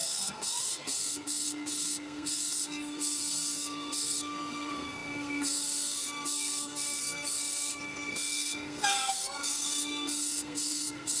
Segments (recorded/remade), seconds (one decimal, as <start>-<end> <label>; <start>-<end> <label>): 0.0-11.2 remade